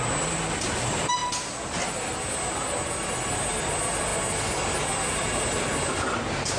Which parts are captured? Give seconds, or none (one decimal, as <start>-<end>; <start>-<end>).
0.0-6.6